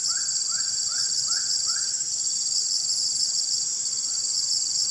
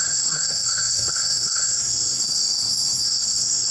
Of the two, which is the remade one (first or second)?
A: second